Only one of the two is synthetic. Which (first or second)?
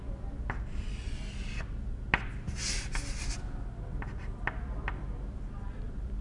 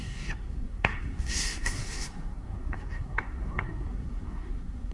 second